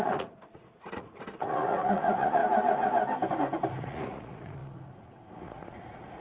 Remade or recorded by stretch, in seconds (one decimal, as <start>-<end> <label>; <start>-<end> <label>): 0.0-2.4 remade; 2.4-3.7 recorded; 3.7-6.2 remade